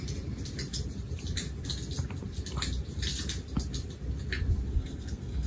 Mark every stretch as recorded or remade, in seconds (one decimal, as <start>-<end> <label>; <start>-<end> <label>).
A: 0.0-4.7 recorded; 4.7-5.5 remade